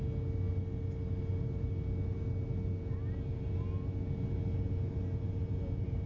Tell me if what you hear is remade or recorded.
recorded